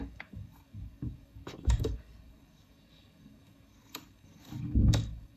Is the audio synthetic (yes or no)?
yes